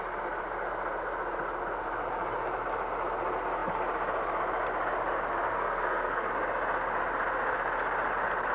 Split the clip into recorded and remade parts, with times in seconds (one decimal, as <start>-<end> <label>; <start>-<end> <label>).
0.0-5.5 recorded; 5.5-6.3 remade; 6.3-8.5 recorded